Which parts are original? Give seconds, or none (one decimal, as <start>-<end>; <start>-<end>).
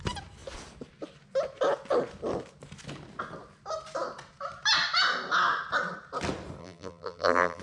0.0-6.6